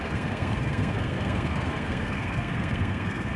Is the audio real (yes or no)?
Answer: no